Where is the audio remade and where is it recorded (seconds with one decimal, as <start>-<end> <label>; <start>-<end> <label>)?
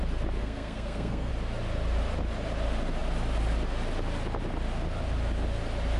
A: 0.0-0.4 recorded; 0.4-1.3 remade; 1.3-6.0 recorded